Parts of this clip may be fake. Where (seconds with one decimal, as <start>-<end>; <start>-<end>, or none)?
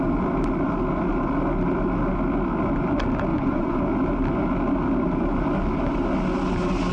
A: 3.3-3.8